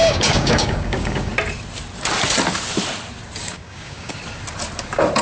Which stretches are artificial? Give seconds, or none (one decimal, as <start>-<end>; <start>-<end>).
0.0-1.3; 3.4-4.2